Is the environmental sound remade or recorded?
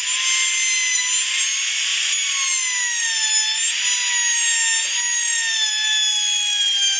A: recorded